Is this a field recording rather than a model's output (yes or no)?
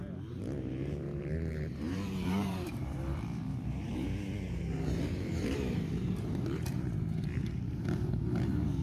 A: no